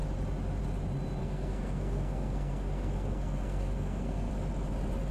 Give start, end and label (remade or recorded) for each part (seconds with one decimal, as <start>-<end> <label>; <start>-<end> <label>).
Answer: 0.0-1.2 recorded; 1.2-4.3 remade; 4.3-5.1 recorded